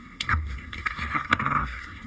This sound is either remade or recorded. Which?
remade